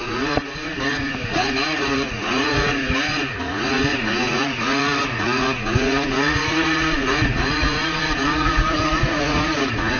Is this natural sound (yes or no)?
no